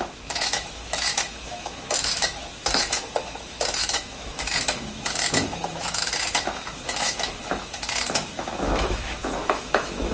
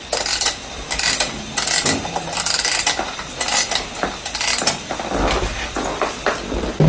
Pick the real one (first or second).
second